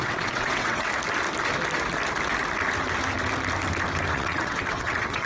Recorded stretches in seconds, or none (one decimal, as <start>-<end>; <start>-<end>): 0.9-4.1